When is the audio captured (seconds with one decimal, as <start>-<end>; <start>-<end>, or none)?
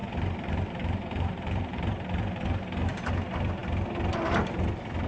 3.1-5.1